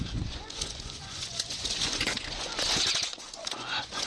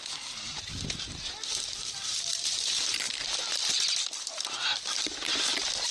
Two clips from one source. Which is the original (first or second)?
second